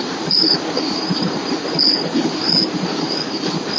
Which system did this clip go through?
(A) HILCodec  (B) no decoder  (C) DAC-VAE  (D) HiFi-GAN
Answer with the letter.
A